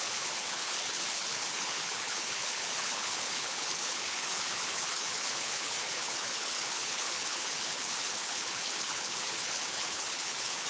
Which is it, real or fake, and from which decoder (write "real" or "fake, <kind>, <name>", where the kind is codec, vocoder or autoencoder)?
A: fake, codec, HILCodec